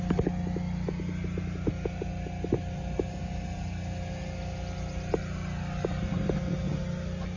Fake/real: real